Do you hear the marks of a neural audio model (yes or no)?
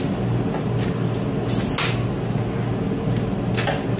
no